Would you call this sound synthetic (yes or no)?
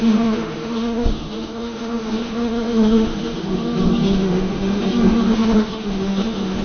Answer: yes